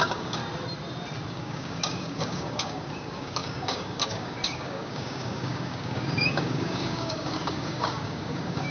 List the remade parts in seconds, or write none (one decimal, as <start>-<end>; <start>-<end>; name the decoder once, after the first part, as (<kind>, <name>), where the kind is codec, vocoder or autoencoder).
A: 0.0-0.4 (codec, DAC); 1.3-8.7